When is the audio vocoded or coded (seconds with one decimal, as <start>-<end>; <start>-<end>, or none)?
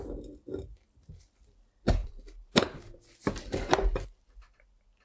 none